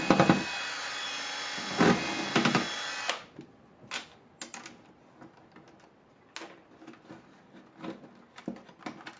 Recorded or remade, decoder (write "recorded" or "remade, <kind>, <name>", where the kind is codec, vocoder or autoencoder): recorded